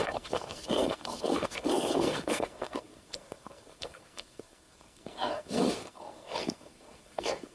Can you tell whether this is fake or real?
fake